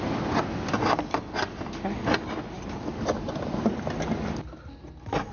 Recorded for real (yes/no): yes